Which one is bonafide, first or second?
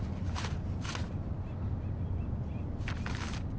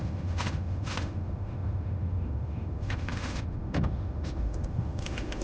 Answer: first